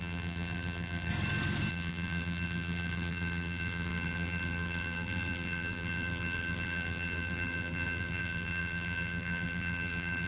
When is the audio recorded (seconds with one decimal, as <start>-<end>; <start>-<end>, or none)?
1.1-1.7